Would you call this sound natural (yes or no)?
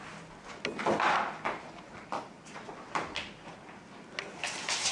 yes